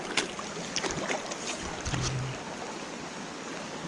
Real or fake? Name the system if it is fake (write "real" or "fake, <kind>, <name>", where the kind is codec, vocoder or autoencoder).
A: real